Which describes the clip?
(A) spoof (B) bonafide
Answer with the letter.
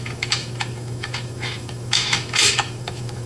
A